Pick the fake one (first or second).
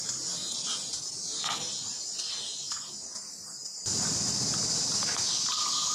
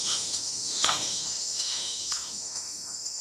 second